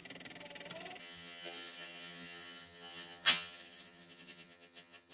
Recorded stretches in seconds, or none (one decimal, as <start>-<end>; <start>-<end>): 0.0-1.0